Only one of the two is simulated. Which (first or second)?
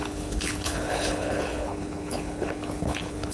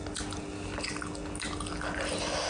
first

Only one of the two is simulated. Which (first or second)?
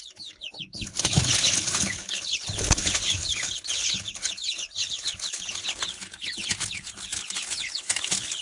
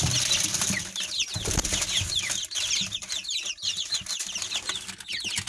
first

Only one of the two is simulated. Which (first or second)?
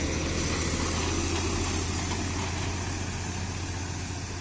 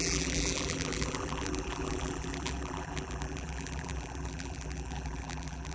second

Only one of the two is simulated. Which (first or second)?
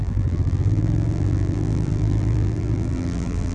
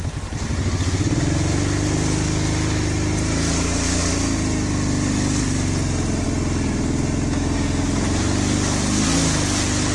first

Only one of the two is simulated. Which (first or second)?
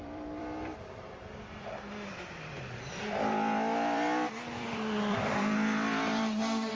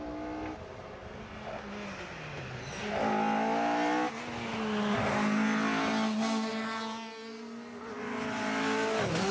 first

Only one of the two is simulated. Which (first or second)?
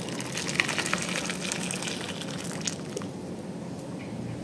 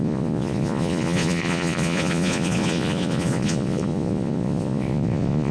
second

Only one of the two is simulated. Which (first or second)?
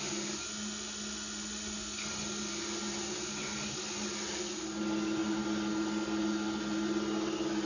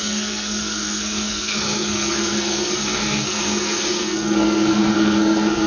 second